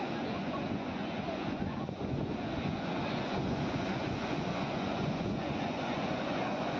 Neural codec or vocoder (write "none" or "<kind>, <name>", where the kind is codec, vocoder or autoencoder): vocoder, Vocos